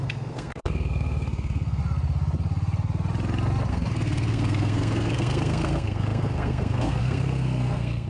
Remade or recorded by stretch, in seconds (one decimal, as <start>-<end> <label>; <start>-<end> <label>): 0.0-1.8 remade; 1.8-3.7 recorded; 3.7-8.1 remade